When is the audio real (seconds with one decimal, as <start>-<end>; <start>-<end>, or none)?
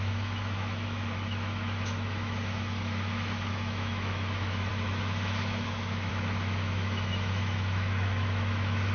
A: none